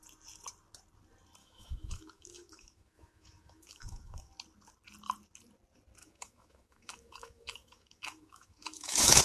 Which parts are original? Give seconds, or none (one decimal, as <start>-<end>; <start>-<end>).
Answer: 0.0-1.4; 4.3-6.0